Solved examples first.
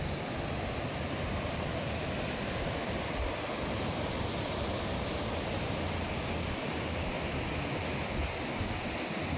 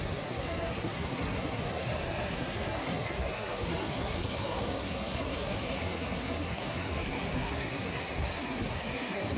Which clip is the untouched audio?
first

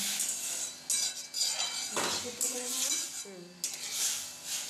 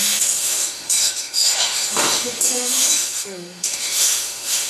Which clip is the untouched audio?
first